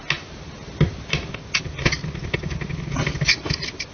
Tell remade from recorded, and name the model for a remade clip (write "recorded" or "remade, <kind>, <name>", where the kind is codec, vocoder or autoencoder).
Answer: recorded